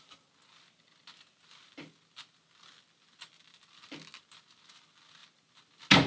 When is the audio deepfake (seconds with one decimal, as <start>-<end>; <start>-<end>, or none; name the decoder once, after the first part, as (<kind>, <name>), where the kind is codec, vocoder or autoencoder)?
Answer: none